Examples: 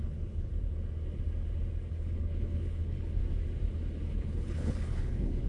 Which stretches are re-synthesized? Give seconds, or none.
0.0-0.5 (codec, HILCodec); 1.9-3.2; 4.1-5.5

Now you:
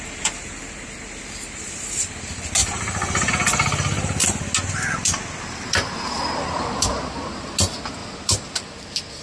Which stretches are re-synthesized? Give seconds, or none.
8.0-8.5 (vocoder, BigVGAN v2)

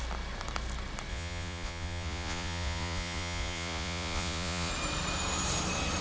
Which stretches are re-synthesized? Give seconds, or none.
1.1-4.7 (vocoder, Vocos)

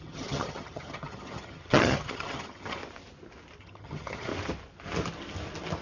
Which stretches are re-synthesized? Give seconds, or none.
0.0-2.8 (vocoder, HiFi-GAN); 3.6-4.3

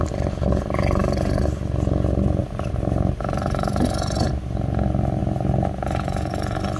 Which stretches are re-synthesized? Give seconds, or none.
2.4-4.3 (vocoder, BigVGAN v2)

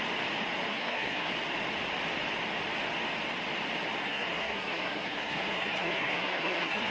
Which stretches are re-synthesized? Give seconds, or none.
0.7-1.3 (codec, SNAC); 4.0-6.9

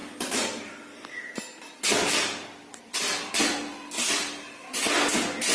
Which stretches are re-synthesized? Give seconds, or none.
0.0-3.3 (vocoder, BigVGAN v2)